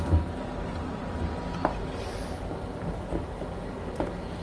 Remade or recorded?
recorded